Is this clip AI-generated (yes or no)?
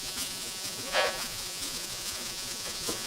yes